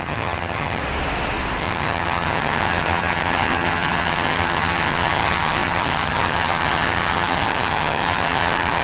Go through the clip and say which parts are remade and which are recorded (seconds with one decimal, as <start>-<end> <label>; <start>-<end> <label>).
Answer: 0.0-0.8 remade; 0.8-1.6 recorded; 1.6-8.8 remade